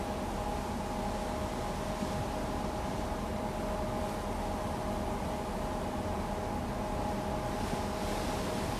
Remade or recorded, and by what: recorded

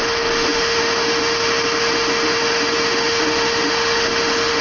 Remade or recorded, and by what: remade, autoencoder, DAC-VAE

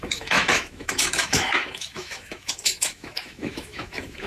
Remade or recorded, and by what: remade, autoencoder, DAC-VAE